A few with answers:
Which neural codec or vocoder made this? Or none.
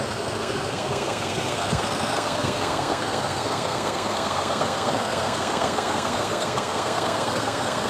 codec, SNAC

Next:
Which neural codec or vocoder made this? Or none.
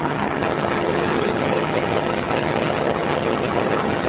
vocoder, HiFi-GAN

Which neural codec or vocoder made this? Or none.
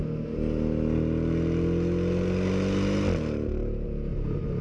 none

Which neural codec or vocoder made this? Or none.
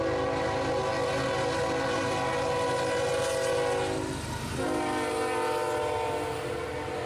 none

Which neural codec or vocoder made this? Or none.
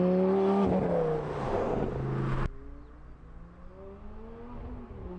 none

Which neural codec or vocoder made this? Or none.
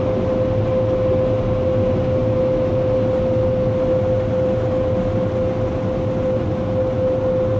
none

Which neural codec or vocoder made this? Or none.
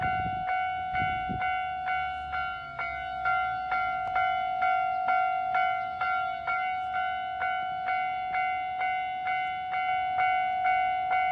none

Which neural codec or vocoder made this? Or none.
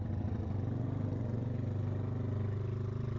none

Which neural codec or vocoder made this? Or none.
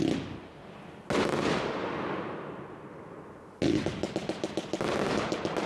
none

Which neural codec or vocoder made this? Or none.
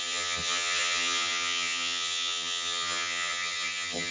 vocoder, HiFi-GAN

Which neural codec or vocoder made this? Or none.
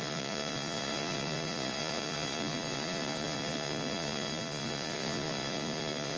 vocoder, Vocos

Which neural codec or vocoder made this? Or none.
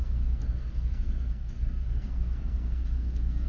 codec, SNAC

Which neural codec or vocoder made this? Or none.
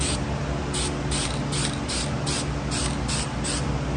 none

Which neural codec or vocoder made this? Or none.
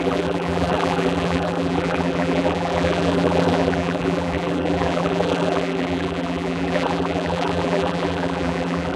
vocoder, BigVGAN v2